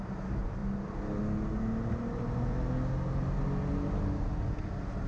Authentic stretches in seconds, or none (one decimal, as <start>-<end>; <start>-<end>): 0.0-5.1

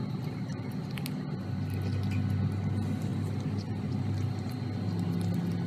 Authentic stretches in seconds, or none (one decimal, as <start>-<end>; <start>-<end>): 0.8-5.7

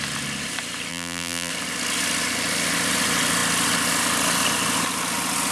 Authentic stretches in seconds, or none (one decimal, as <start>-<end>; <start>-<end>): 0.0-0.9; 1.5-5.5

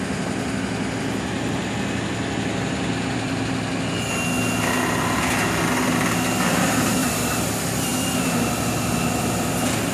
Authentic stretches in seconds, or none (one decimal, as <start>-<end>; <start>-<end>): 0.0-7.0; 7.5-9.9

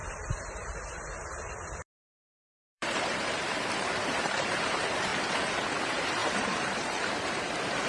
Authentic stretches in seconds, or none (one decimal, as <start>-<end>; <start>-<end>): 5.1-5.7